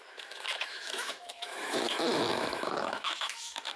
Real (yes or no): no